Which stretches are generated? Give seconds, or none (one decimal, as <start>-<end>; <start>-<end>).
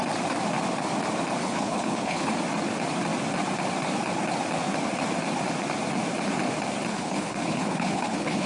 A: 1.4-2.3; 6.9-8.5